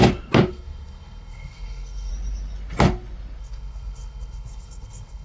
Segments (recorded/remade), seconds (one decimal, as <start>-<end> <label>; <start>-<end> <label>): 0.0-0.5 recorded; 0.5-2.1 remade; 2.1-3.4 recorded; 3.4-5.2 remade